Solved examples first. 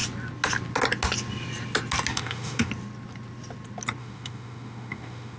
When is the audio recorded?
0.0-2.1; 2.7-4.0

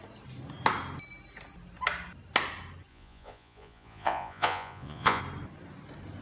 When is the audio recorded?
0.0-2.9; 5.2-6.2

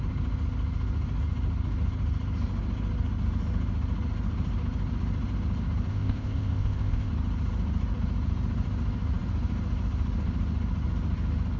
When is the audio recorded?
0.0-5.9; 7.1-11.6

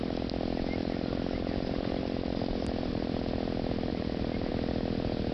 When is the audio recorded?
0.0-0.8; 3.1-3.9; 4.5-5.3

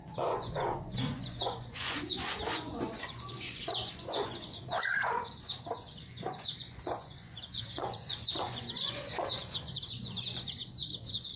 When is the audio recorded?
none

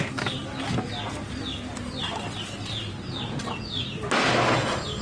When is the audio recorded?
0.0-5.0

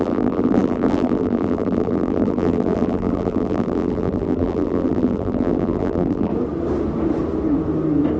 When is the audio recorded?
6.3-8.2